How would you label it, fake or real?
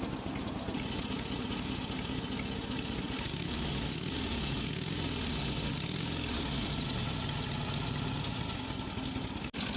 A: real